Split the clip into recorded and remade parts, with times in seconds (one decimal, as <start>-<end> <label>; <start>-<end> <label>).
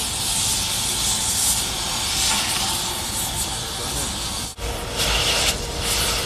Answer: 0.0-6.3 recorded